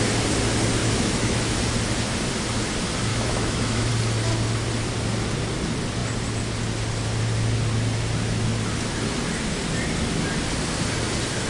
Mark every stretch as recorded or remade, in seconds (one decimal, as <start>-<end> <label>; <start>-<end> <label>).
0.0-0.8 recorded; 0.8-1.6 remade; 1.6-3.1 recorded; 3.1-3.9 remade; 3.9-11.5 recorded